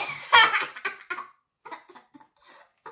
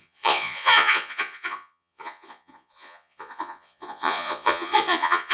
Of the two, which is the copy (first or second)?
second